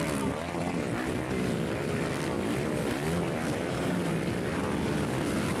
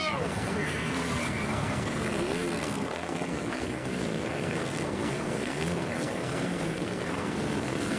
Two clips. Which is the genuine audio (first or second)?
first